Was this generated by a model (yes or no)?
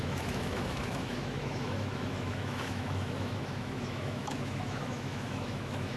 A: yes